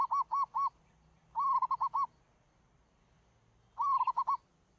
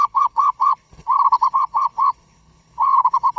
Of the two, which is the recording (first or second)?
first